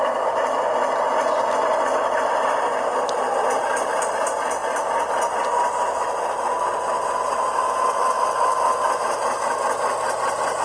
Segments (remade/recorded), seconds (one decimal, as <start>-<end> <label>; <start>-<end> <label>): 0.0-10.6 recorded